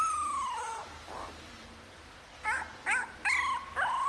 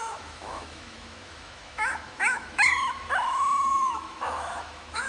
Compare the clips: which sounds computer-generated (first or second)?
second